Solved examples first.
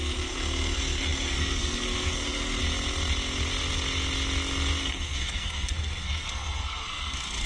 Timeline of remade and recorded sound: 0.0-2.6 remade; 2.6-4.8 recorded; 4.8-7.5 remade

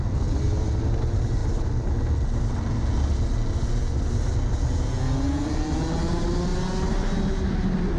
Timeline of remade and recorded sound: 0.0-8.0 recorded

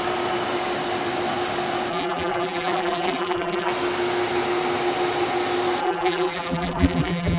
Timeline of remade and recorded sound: 0.0-1.9 recorded; 1.9-3.7 remade; 3.7-5.8 recorded; 5.8-7.4 remade

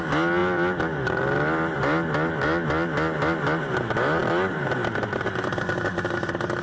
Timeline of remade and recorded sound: 0.0-6.6 recorded

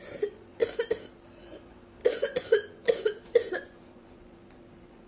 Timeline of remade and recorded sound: 0.0-0.6 remade; 0.6-1.4 recorded; 1.4-5.1 remade